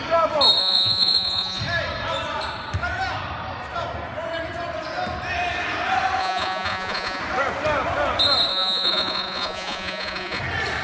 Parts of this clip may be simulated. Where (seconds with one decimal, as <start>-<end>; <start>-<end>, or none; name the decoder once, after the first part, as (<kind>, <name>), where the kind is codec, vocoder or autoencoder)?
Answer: 0.6-1.6 (vocoder, Vocos); 6.2-7.2; 8.5-10.4